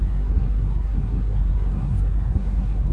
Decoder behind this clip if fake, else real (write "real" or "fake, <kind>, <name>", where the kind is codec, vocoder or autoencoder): fake, codec, SNAC